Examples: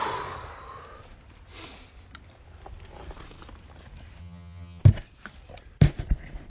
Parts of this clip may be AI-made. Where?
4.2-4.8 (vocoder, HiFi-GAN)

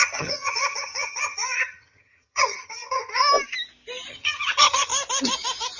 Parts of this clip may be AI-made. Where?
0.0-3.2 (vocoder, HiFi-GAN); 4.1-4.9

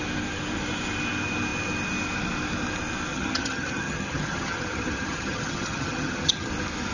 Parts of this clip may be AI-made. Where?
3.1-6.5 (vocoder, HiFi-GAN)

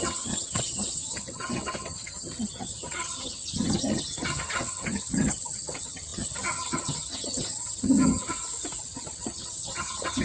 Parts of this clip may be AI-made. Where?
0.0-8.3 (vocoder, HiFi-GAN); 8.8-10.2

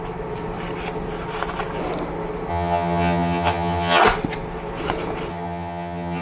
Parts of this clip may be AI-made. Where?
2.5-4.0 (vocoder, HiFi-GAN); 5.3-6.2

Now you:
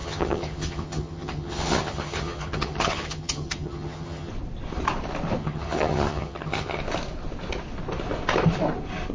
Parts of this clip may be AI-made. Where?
0.0-4.3 (vocoder, HiFi-GAN); 5.4-6.8